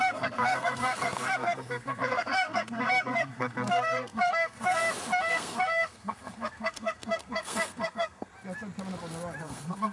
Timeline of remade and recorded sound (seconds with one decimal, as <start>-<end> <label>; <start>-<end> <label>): 0.0-4.8 remade; 4.8-5.3 recorded; 5.3-8.3 remade; 8.3-9.4 recorded; 9.4-9.9 remade